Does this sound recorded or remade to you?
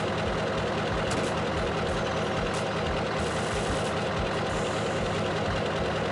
recorded